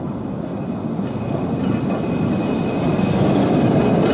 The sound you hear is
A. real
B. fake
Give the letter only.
A